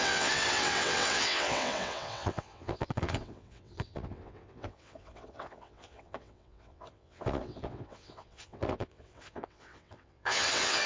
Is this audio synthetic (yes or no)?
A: yes